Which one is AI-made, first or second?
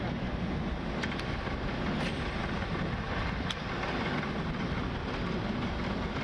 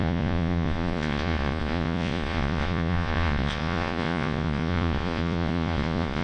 second